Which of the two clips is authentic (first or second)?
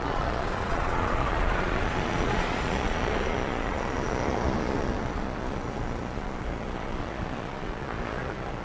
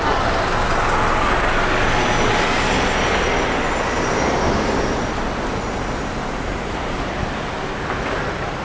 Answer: second